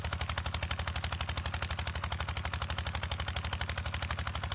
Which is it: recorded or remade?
recorded